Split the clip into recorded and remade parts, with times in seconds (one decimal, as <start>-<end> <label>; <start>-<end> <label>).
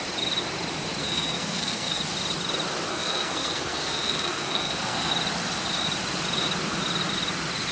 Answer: 0.0-1.0 recorded; 1.0-2.0 remade; 2.0-2.9 recorded; 2.9-5.1 remade; 5.1-7.7 recorded